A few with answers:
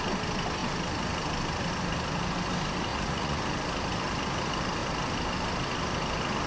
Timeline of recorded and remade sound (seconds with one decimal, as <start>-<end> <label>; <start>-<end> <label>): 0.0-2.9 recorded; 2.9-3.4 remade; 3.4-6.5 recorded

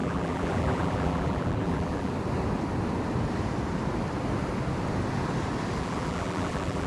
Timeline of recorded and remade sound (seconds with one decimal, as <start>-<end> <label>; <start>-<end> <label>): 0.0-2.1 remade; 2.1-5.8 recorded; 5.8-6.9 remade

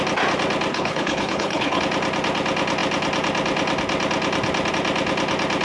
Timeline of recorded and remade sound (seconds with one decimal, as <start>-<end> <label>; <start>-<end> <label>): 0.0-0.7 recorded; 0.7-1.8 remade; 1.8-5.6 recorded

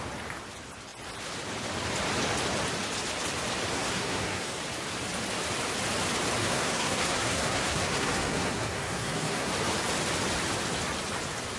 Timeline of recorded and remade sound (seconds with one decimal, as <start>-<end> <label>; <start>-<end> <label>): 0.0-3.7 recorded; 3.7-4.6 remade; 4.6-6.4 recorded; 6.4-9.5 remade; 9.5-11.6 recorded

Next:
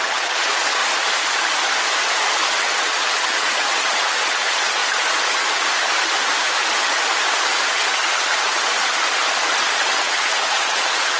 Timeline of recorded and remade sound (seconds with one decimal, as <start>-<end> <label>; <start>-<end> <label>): 0.0-0.8 remade; 0.8-2.5 recorded; 2.5-4.8 remade; 4.8-7.7 recorded; 7.7-8.7 remade; 8.7-9.7 recorded; 9.7-11.2 remade

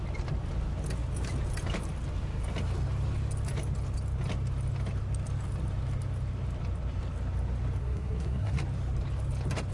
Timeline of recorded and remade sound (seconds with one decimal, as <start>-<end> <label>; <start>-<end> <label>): 0.0-7.8 recorded; 7.8-8.6 remade; 8.6-9.7 recorded

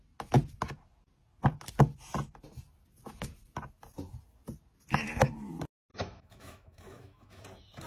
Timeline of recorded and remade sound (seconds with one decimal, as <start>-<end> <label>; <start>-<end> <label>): 0.0-5.9 recorded; 5.9-7.4 remade; 7.4-7.9 recorded